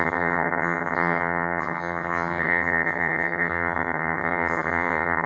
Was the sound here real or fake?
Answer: fake